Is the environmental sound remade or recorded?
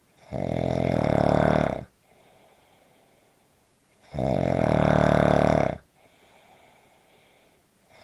remade